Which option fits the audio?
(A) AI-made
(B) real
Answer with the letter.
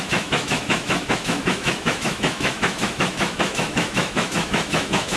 A